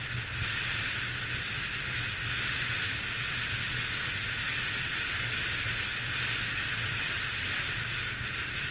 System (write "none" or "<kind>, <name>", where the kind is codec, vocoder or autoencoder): none